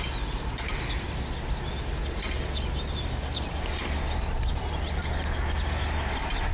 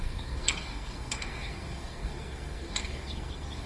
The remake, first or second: second